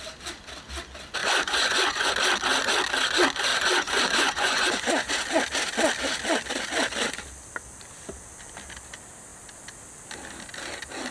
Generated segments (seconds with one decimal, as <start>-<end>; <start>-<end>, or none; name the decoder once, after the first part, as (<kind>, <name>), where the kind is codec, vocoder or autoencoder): 1.2-2.1 (vocoder, Vocos); 3.5-5.1